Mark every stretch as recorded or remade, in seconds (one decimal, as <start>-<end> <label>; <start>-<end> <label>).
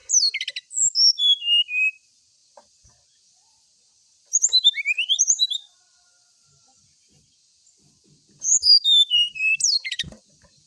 0.0-1.2 recorded; 1.2-10.7 remade